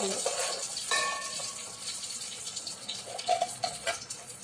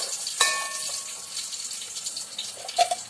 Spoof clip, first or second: first